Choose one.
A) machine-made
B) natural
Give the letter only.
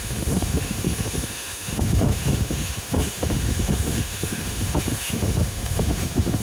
A